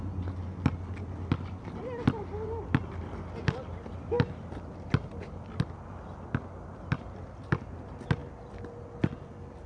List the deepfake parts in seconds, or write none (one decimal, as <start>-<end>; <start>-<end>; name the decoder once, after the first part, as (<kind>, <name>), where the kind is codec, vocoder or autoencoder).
none